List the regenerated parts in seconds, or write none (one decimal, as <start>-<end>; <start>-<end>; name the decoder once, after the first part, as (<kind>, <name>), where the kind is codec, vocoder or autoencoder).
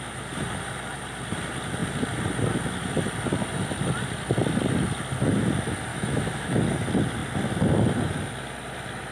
5.9-6.6 (autoencoder, DAC-VAE)